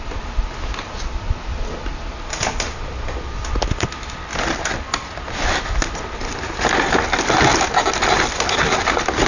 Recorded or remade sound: recorded